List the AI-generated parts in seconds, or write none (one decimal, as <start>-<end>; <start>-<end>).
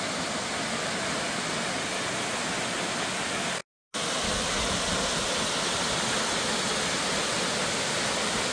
none